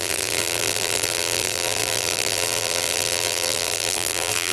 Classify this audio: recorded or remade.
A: remade